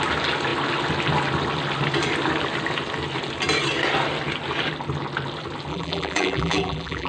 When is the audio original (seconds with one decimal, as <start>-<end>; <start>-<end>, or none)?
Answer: 0.0-5.7